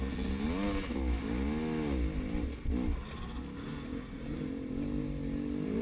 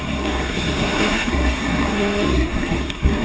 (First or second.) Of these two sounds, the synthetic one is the second